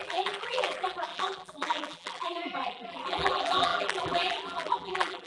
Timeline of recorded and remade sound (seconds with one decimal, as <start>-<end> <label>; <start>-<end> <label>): 0.0-5.3 remade